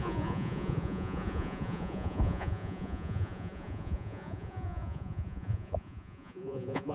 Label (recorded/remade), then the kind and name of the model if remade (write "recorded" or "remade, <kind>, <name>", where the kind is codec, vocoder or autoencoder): remade, vocoder, Vocos